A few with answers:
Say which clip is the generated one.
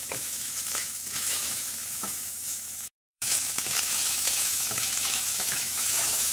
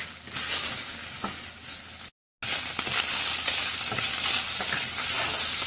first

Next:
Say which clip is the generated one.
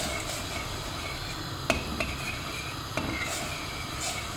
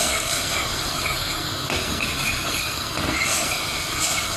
second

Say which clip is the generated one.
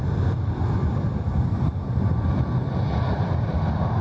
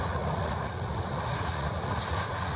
second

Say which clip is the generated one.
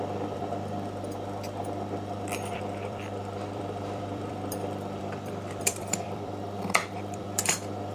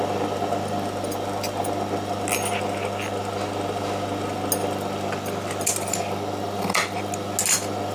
first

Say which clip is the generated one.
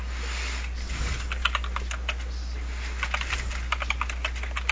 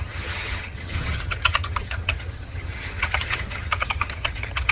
second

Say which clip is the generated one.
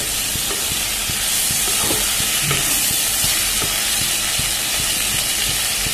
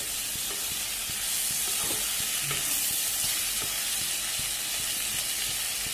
first